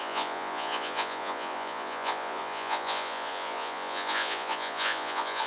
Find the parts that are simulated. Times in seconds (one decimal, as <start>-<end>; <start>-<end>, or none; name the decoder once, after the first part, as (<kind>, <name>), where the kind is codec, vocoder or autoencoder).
0.0-5.5 (vocoder, Vocos)